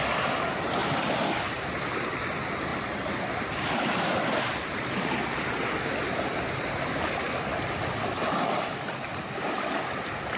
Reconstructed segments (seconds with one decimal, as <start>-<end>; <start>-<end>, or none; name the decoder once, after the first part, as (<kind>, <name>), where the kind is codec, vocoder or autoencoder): 0.8-2.2 (vocoder, BigVGAN v2); 2.7-5.1; 5.7-8.9